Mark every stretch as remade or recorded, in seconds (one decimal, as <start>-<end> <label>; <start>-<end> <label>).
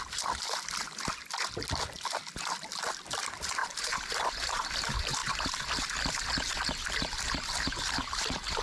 0.0-3.6 recorded; 3.6-4.1 remade; 4.1-8.6 recorded